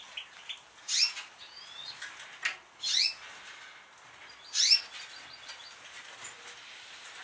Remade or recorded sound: recorded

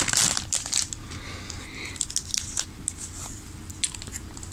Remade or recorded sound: recorded